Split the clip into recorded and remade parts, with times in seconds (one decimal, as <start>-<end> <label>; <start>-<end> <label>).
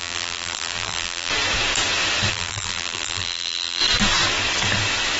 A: 0.0-1.3 remade; 1.3-2.3 recorded; 2.3-3.8 remade; 3.8-5.2 recorded